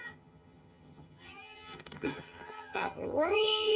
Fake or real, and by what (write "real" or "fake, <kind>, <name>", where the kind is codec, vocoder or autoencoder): fake, vocoder, HiFi-GAN